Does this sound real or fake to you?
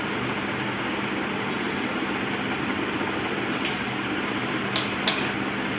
real